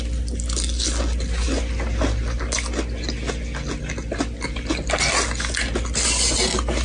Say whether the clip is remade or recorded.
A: recorded